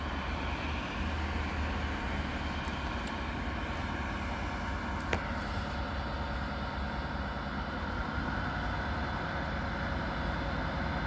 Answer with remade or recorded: recorded